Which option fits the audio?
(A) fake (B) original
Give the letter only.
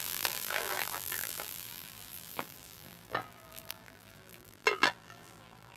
A